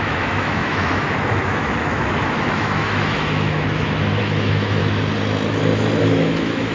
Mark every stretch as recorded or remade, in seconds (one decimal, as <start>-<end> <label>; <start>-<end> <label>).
0.0-4.8 remade; 4.8-6.0 recorded; 6.0-6.7 remade